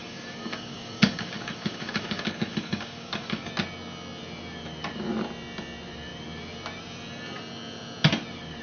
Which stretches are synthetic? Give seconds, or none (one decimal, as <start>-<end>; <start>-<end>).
0.0-3.5